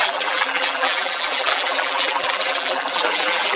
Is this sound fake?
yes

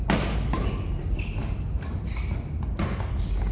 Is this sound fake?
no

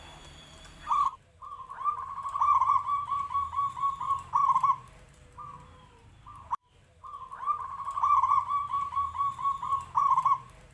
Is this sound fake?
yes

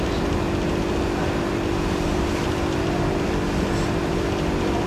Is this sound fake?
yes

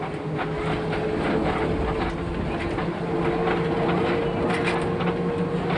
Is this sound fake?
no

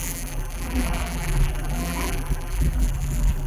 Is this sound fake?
yes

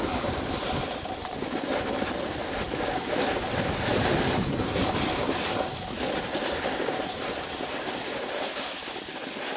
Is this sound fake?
no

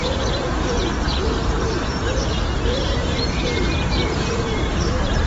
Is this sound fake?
yes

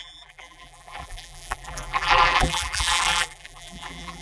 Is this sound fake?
yes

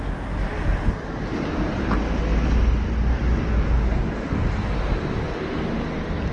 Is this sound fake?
no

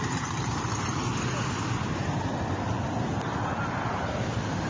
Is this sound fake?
no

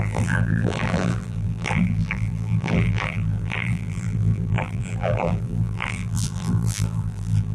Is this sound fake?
yes